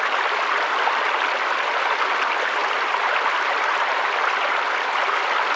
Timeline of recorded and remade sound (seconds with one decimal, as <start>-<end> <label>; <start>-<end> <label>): 0.0-5.6 recorded